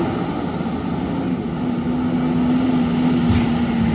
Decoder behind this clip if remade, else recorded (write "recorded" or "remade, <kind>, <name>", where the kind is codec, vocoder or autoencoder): recorded